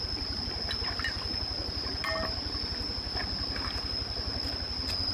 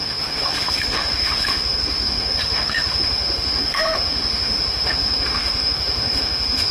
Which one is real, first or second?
first